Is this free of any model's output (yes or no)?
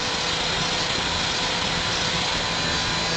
yes